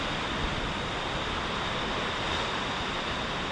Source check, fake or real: real